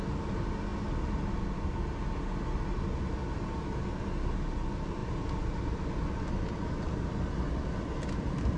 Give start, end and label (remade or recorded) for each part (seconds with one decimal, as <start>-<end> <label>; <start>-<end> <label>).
0.0-8.6 recorded